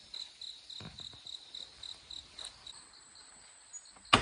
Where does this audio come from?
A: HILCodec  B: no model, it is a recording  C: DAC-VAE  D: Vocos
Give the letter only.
B